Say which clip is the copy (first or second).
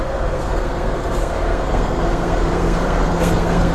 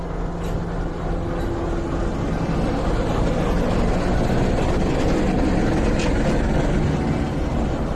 first